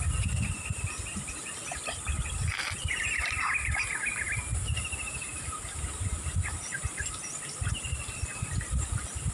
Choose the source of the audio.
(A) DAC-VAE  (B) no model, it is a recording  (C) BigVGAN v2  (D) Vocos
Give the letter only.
B